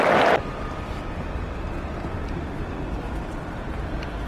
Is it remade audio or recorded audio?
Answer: remade